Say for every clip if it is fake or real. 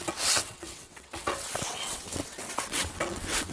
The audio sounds fake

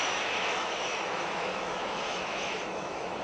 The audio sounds fake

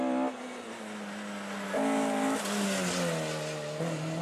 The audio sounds real